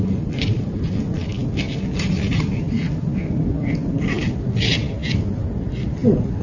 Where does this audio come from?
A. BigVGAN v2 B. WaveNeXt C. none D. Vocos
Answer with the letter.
C